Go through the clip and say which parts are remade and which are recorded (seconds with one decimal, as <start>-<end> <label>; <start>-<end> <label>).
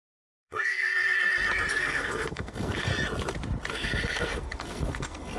0.0-0.9 remade; 0.9-1.7 recorded; 1.7-2.9 remade; 2.9-3.7 recorded; 3.7-5.4 remade